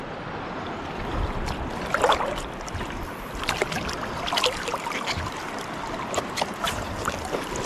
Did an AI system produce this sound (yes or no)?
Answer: no